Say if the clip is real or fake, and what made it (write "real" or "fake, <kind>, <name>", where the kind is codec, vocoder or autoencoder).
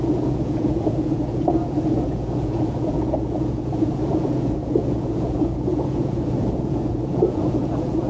fake, vocoder, Vocos